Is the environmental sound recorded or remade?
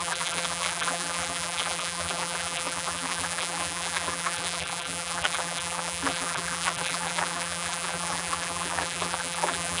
remade